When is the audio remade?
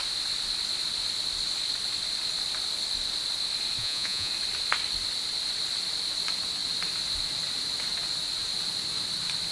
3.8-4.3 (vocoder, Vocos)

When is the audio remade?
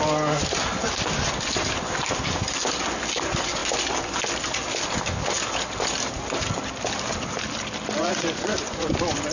8.0-8.9 (vocoder, Vocos)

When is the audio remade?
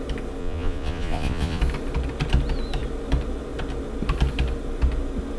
0.4-1.6 (vocoder, Vocos)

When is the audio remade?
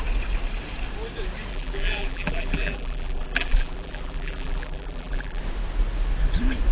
1.5-5.4 (vocoder, BigVGAN v2)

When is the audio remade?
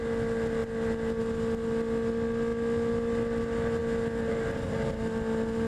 none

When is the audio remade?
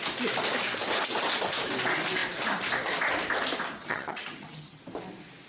3.8-4.8 (vocoder, HiFi-GAN)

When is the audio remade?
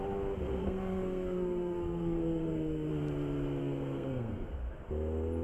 0.6-2.9 (codec, SNAC); 3.6-4.7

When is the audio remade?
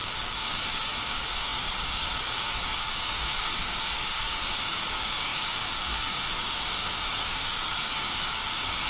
0.0-8.9 (codec, DAC)